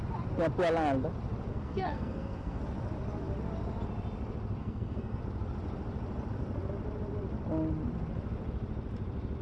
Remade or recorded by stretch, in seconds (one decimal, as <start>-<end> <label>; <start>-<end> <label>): 0.0-1.5 recorded; 1.5-2.6 remade; 2.6-4.6 recorded; 4.6-5.2 remade; 5.2-9.4 recorded